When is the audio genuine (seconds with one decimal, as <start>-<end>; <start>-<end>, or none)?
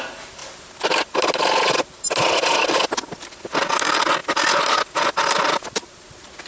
0.0-6.5